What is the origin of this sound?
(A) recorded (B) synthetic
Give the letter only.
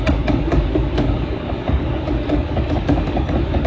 B